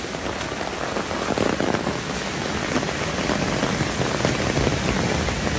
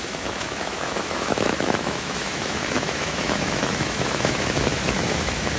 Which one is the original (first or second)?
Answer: first